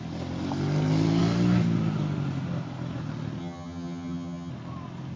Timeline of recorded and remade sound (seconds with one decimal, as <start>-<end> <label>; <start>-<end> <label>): 0.0-3.4 recorded; 3.4-4.5 remade; 4.5-5.2 recorded